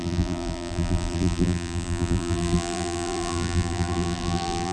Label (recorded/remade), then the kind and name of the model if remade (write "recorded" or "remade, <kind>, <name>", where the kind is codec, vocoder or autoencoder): remade, vocoder, BigVGAN v2